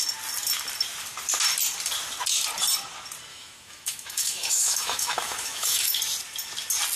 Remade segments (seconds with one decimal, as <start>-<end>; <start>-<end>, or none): 3.3-6.0